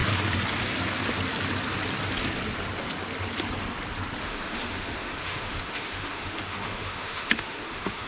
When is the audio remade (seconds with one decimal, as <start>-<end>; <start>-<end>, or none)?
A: 4.2-8.1